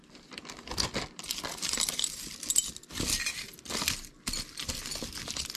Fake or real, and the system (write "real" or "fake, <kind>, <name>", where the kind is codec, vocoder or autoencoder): real